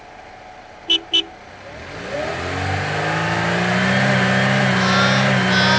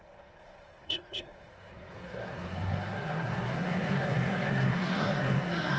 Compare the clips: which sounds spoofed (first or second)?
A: second